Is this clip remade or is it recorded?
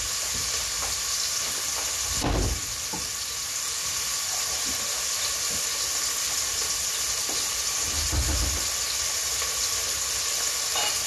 recorded